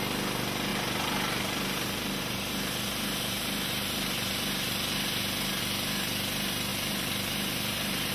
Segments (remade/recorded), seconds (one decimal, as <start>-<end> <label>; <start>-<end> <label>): 0.0-0.7 recorded; 0.7-5.6 remade; 5.6-6.7 recorded; 6.7-8.1 remade